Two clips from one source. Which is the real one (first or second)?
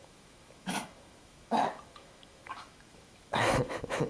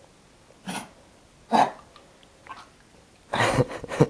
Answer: second